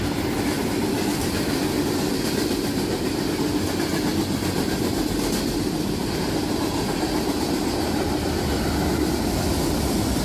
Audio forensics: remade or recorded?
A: recorded